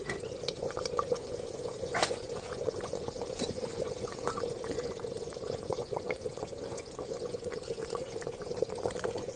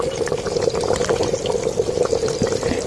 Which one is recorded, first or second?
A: second